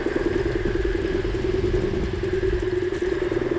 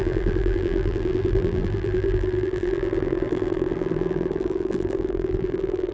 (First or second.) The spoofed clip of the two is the second